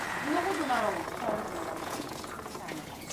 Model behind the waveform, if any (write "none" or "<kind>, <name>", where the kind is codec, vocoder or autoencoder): vocoder, Vocos